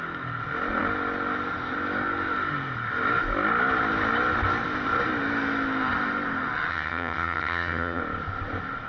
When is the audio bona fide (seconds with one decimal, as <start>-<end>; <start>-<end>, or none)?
0.0-6.7; 8.0-8.9